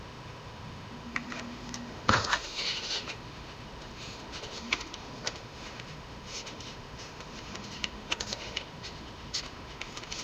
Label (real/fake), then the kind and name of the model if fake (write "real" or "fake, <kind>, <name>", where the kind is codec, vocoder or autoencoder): fake, autoencoder, DAC-VAE